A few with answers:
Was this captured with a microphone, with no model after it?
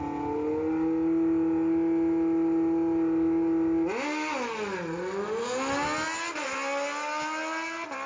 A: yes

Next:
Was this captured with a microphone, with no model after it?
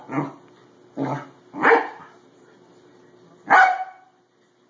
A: yes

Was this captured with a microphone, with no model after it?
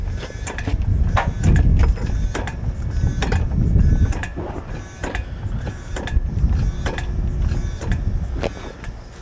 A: yes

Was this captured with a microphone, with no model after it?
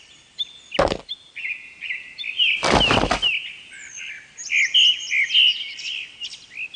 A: yes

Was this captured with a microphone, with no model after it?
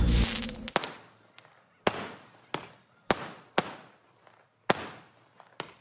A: yes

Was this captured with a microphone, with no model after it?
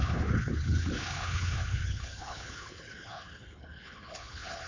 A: no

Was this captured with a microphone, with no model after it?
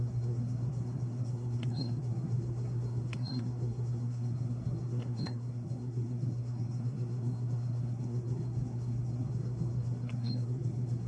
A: no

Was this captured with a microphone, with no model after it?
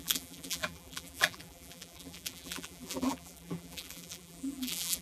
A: no